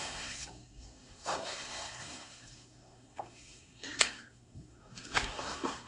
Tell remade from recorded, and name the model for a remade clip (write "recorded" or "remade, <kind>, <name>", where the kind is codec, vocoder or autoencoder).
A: remade, codec, SNAC